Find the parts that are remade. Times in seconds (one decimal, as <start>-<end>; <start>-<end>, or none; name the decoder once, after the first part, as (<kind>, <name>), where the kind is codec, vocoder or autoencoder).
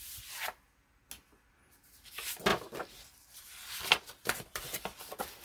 2.5-5.0 (vocoder, BigVGAN v2)